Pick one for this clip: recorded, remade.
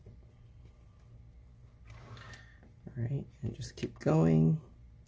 recorded